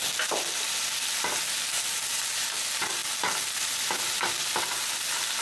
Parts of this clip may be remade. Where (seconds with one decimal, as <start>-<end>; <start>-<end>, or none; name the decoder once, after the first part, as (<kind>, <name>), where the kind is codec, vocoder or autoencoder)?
none